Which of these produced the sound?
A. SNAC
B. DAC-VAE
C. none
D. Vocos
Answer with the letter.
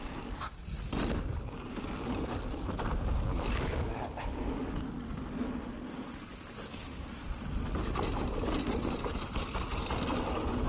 C